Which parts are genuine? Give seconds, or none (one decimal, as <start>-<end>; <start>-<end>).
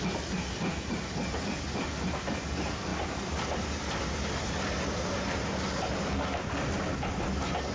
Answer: 0.0-7.7